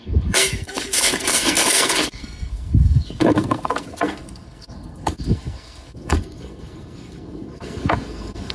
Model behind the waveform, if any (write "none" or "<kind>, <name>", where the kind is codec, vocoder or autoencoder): codec, SNAC